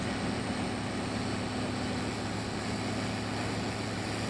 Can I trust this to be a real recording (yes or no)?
yes